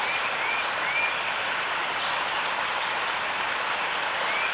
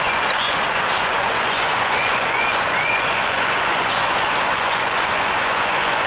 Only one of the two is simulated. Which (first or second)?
second